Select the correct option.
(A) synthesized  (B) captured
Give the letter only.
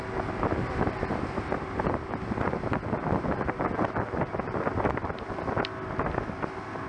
B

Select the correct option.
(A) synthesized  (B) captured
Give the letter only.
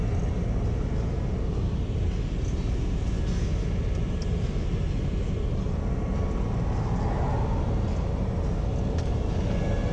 B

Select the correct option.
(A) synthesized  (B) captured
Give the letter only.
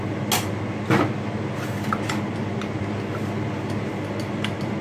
B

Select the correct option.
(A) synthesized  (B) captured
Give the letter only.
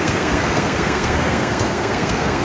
A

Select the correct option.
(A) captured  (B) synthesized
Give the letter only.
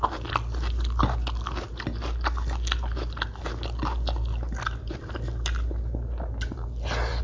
A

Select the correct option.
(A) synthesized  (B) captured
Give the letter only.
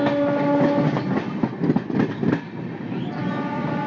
B